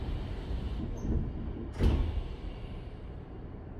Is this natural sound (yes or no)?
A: yes